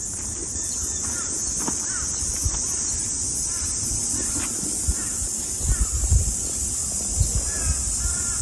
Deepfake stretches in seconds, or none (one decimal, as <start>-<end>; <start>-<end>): 0.4-1.3